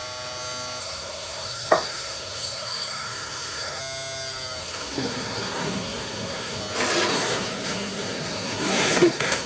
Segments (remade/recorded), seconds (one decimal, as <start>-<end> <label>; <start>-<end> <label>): 0.0-0.8 recorded; 0.8-3.8 remade; 3.8-4.6 recorded; 4.6-6.6 remade; 6.6-7.1 recorded; 7.1-9.5 remade